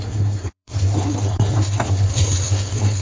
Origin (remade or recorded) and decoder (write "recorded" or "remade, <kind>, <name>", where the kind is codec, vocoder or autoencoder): remade, codec, SNAC